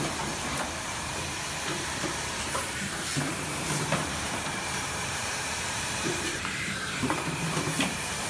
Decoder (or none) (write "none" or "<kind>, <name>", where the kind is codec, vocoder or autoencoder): vocoder, BigVGAN v2